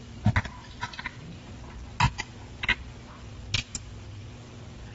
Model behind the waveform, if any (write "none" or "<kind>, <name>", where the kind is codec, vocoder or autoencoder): none